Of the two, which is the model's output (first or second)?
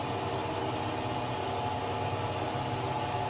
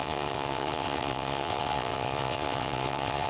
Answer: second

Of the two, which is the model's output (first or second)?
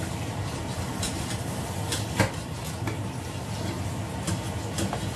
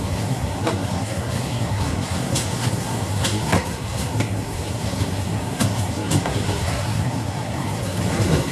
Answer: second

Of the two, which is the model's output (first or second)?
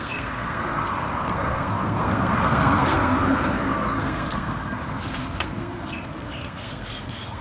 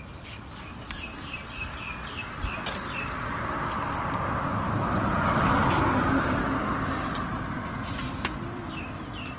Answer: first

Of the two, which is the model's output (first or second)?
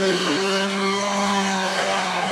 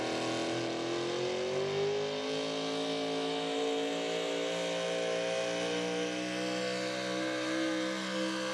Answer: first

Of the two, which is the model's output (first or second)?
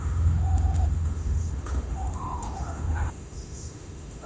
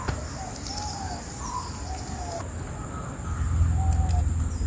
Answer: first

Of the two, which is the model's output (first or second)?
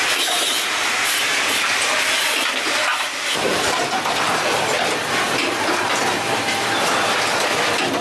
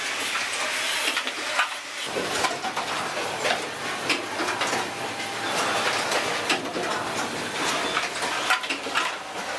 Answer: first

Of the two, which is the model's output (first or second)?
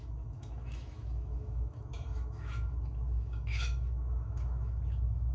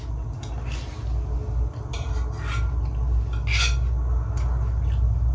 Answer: first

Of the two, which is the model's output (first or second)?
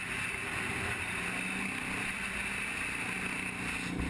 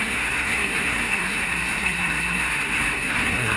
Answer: second